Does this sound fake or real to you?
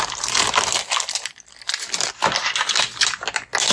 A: real